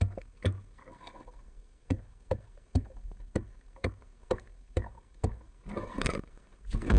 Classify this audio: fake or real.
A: fake